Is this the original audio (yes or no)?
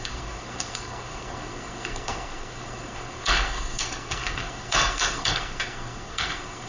no